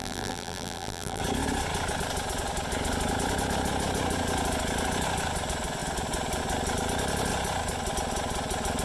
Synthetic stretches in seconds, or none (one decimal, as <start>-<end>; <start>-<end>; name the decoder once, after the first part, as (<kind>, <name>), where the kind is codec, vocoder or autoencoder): 0.0-1.2 (vocoder, BigVGAN v2)